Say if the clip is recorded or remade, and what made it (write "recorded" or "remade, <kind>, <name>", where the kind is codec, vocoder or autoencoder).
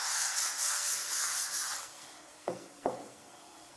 remade, codec, SNAC